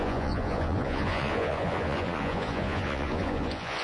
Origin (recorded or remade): remade